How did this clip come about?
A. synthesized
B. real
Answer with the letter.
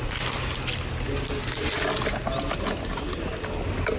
B